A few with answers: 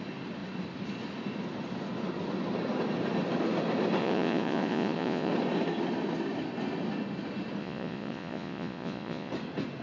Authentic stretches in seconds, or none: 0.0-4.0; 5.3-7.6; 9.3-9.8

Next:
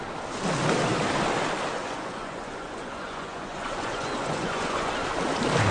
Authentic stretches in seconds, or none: 0.0-1.8; 4.9-5.7